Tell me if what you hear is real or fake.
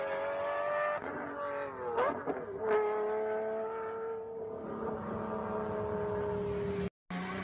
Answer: real